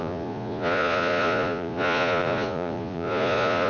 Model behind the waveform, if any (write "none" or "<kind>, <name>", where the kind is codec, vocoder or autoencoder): vocoder, Vocos